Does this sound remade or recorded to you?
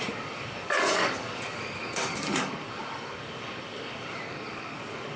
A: remade